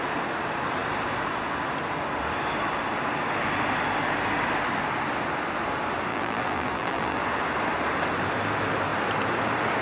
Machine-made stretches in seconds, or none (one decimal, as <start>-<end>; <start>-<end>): 6.1-7.2